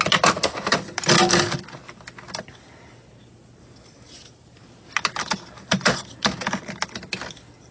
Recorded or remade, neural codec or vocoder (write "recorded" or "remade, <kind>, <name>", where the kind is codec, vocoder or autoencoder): recorded